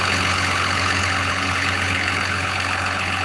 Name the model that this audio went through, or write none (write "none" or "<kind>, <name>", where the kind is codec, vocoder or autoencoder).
codec, HILCodec